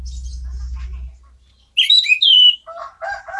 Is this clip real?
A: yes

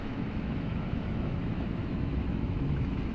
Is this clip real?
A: no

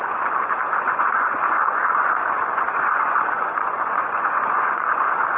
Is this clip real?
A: no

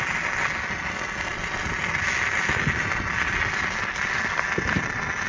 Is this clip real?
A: yes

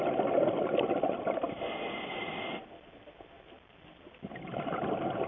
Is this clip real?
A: yes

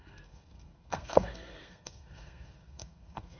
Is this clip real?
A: no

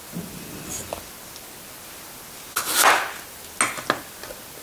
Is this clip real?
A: yes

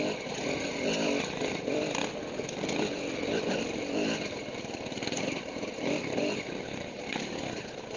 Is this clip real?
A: no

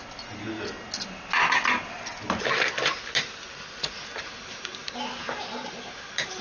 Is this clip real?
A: yes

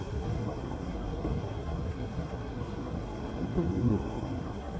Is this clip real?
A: no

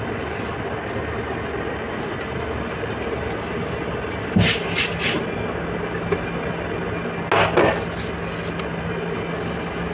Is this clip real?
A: yes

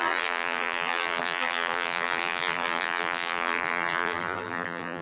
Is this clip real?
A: no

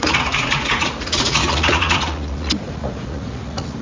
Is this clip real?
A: no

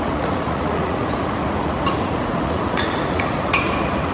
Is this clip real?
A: no